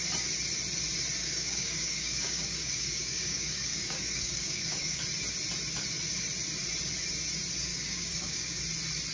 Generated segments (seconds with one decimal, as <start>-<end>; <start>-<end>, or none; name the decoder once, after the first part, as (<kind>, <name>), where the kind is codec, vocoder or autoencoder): 1.2-5.0 (codec, DAC); 7.7-8.6